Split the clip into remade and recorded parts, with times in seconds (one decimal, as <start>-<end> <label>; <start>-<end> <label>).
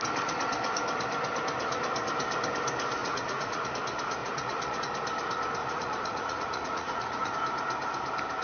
0.0-3.0 recorded; 3.0-3.7 remade; 3.7-4.2 recorded; 4.2-4.8 remade; 4.8-5.6 recorded; 5.6-7.3 remade; 7.3-8.4 recorded